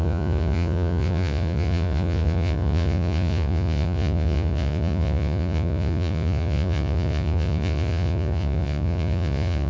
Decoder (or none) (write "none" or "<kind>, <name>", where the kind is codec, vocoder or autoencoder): vocoder, Vocos